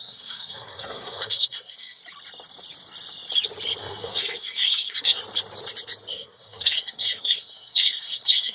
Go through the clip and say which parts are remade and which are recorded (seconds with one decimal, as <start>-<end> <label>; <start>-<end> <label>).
0.0-2.0 remade; 2.0-3.8 recorded; 3.8-5.2 remade; 5.2-6.1 recorded; 6.1-8.5 remade